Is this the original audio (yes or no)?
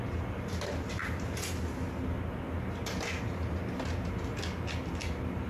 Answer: yes